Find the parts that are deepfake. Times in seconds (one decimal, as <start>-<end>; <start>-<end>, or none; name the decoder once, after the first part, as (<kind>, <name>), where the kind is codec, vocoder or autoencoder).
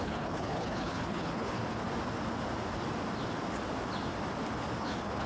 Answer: 0.0-1.6 (codec, HILCodec); 4.8-5.3